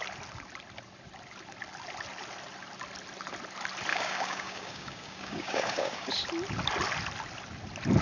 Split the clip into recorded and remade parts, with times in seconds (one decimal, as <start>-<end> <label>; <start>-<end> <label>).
0.0-3.9 recorded; 3.9-6.1 remade; 6.1-8.0 recorded